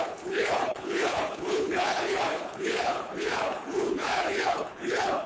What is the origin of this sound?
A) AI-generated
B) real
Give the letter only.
A